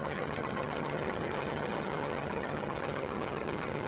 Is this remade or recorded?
remade